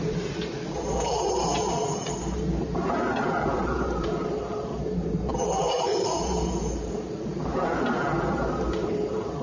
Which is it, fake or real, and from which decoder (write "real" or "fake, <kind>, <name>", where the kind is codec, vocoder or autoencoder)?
fake, vocoder, BigVGAN v2